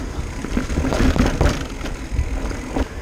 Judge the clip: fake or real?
real